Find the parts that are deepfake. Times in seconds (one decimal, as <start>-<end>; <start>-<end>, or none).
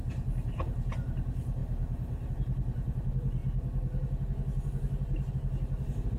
0.0-1.6; 2.3-3.4; 5.3-6.2